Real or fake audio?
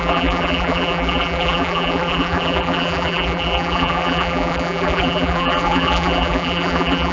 fake